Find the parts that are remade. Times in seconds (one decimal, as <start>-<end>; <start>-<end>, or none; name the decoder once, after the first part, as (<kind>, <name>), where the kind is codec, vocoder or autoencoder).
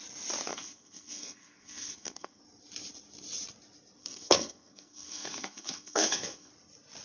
0.5-2.4 (codec, SNAC); 4.0-6.5